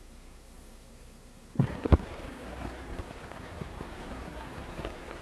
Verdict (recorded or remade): remade